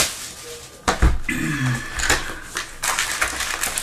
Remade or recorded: recorded